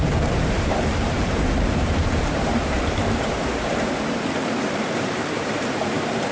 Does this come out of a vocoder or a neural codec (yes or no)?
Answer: yes